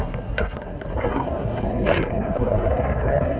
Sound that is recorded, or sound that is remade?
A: remade